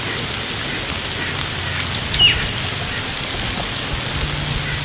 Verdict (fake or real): real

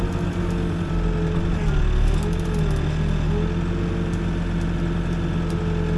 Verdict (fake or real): real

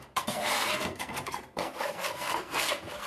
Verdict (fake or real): fake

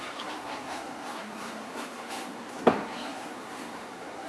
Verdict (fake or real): fake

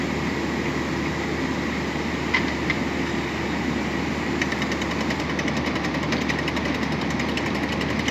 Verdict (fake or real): real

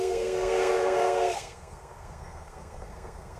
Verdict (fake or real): fake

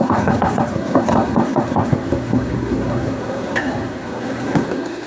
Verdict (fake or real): fake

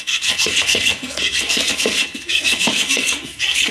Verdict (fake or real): fake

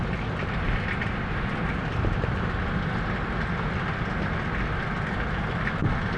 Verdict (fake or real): real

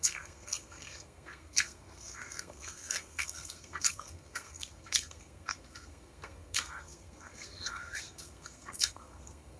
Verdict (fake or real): fake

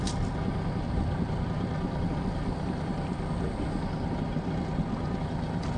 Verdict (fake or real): real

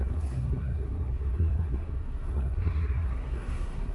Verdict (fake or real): fake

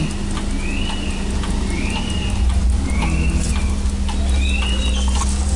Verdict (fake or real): real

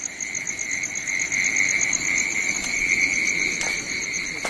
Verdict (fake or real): real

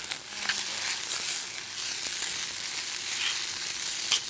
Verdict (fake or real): real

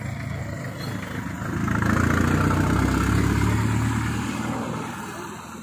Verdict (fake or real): real